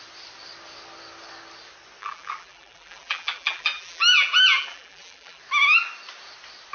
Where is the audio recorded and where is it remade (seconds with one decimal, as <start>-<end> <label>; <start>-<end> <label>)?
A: 0.0-2.0 recorded; 2.0-5.4 remade; 5.4-6.7 recorded